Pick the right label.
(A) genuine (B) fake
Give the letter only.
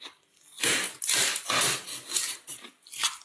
A